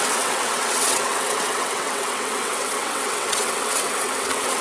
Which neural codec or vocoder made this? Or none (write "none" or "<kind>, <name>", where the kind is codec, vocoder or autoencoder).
vocoder, WaveNeXt